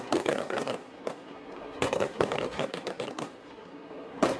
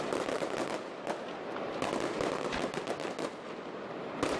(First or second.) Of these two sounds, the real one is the second